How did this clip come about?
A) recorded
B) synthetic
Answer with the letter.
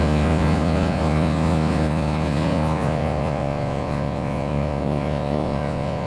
B